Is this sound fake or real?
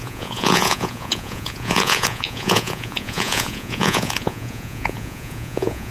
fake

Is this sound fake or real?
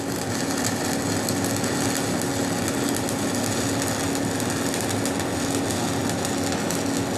real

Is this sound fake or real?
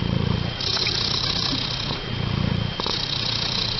fake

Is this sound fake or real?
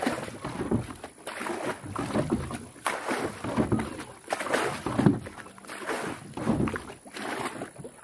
real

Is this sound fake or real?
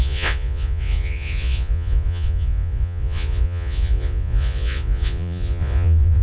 fake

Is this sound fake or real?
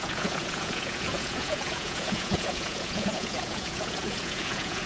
fake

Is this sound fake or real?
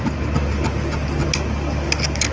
real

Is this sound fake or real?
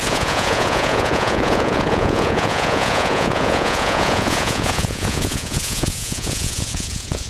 fake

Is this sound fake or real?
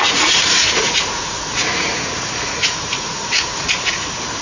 fake